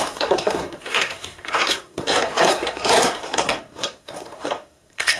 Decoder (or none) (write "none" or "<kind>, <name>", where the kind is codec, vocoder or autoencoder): codec, SNAC